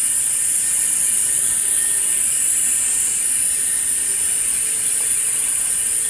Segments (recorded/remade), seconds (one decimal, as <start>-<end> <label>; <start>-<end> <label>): 0.0-6.1 recorded